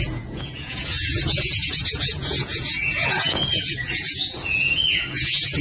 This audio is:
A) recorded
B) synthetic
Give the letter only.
B